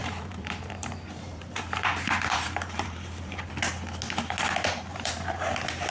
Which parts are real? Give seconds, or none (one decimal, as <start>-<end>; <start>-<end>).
3.5-4.9